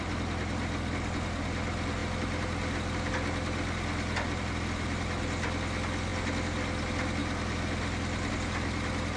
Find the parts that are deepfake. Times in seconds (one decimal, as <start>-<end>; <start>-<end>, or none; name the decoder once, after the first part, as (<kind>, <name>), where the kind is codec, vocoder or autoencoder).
none